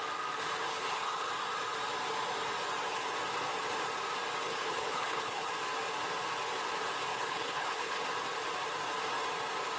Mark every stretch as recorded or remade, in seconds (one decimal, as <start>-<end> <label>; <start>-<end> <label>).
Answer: 0.0-0.7 recorded; 0.7-1.3 remade; 1.3-4.4 recorded; 4.4-5.5 remade; 5.5-7.1 recorded; 7.1-8.0 remade; 8.0-9.8 recorded